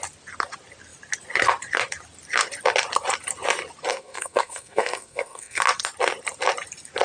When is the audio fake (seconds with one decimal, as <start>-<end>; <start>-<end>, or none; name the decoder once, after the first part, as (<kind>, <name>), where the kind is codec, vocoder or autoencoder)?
3.9-5.6 (codec, SNAC)